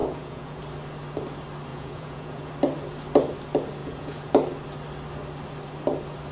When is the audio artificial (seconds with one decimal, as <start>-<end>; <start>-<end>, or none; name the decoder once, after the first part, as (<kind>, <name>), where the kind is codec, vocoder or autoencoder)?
0.0-0.6 (vocoder, Vocos); 1.7-2.5; 3.8-4.3